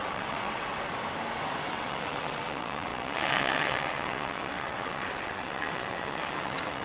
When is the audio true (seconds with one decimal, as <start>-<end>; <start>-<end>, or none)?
0.7-1.7